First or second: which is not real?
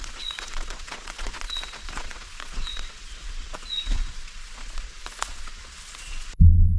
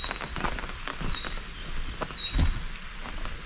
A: first